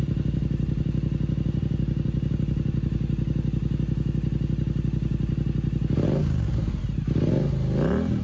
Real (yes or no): yes